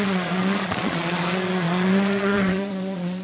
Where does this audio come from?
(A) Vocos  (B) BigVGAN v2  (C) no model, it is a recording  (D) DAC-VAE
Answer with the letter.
A